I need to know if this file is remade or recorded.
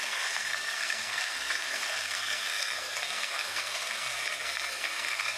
remade